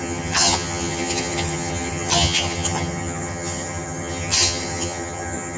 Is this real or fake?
fake